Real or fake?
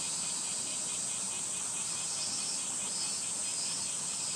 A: real